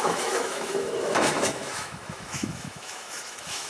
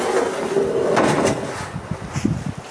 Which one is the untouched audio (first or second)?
second